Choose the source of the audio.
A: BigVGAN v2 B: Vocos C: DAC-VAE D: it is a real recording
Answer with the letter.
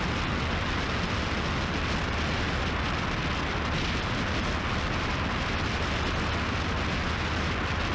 D